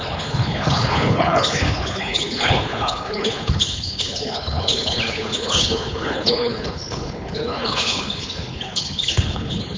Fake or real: fake